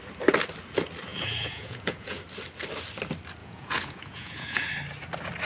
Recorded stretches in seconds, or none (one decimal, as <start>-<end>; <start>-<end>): 0.0-1.1; 2.2-3.4; 4.7-5.5